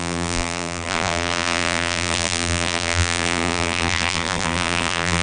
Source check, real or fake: fake